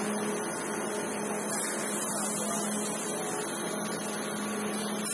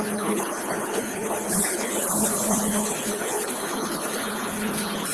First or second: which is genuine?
first